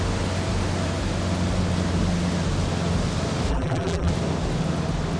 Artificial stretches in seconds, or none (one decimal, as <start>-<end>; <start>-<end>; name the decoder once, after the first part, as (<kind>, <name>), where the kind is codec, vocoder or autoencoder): 3.5-4.1 (vocoder, BigVGAN v2)

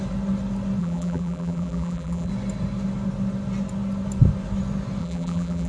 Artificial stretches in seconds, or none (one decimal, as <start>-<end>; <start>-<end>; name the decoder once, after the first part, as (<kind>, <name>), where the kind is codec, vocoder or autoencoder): 0.8-2.3 (vocoder, BigVGAN v2); 5.0-5.7